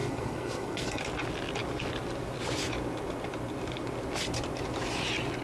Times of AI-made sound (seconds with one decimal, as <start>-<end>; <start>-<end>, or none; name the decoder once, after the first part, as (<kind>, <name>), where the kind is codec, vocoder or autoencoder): 0.0-1.0 (codec, SNAC)